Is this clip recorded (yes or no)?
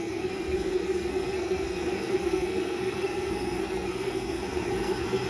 no